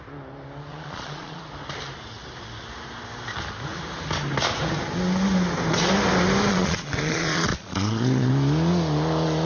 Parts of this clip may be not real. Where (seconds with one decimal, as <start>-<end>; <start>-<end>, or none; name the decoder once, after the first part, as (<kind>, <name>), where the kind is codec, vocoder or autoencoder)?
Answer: 0.7-1.4 (vocoder, Vocos); 6.5-8.3